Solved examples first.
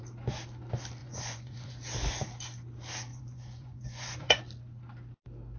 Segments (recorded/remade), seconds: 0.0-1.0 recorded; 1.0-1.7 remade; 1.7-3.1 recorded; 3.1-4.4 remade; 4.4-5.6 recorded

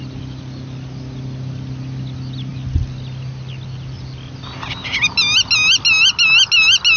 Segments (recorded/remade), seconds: 0.0-7.0 recorded

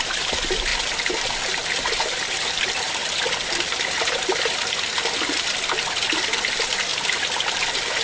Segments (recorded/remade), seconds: 0.0-8.0 recorded

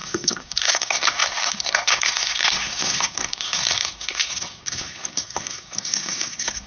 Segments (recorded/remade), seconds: 0.0-6.7 remade

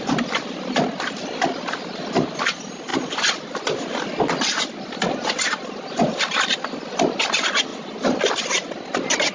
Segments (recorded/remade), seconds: 0.0-9.3 recorded

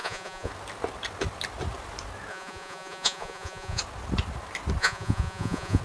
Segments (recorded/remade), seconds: 0.0-0.5 remade; 0.5-2.3 recorded; 2.3-3.8 remade; 3.8-4.8 recorded; 4.8-5.8 remade